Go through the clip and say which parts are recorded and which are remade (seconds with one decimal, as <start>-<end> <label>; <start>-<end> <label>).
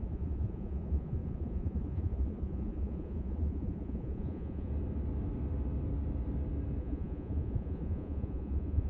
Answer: 0.0-4.7 remade; 4.7-6.8 recorded; 6.8-8.9 remade